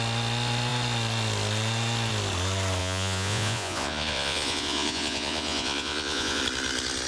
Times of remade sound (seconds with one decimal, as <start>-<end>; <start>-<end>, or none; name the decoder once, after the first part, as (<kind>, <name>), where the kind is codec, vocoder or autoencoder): 2.8-6.4 (vocoder, Vocos)